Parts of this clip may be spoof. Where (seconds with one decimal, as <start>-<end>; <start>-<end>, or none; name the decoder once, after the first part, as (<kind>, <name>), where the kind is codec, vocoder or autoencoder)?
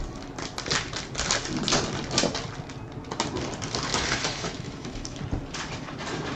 3.9-5.2 (autoencoder, DAC-VAE)